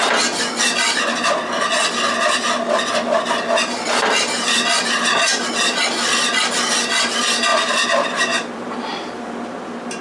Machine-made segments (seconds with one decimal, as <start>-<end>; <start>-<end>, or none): none